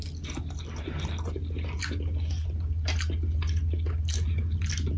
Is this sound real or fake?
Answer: real